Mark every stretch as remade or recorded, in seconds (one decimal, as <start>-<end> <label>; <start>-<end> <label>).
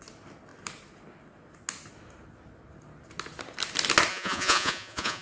0.0-4.1 recorded; 4.1-5.2 remade